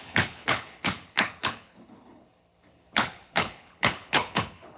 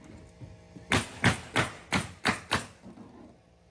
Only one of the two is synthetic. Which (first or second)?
first